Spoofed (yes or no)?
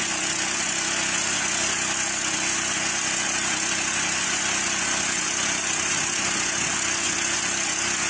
yes